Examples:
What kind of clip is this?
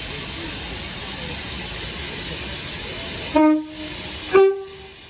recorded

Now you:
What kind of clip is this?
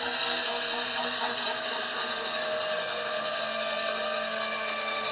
remade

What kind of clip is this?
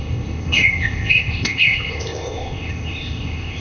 remade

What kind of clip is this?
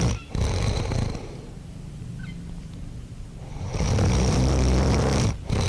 remade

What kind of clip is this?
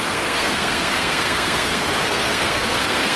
remade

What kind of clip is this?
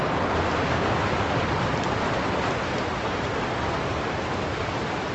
recorded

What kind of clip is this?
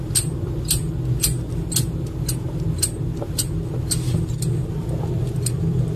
recorded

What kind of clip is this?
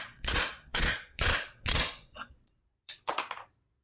remade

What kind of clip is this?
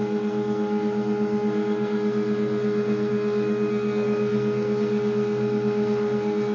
remade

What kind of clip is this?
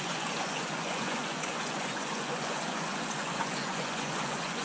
remade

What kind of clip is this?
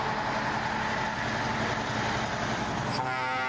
recorded